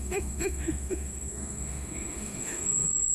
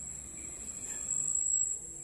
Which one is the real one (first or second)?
second